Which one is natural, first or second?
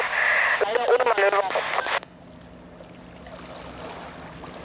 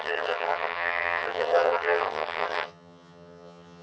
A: first